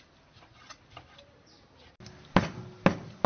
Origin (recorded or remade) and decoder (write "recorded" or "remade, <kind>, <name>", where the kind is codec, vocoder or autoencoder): recorded